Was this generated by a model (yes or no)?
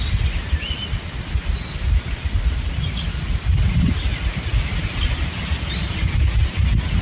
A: no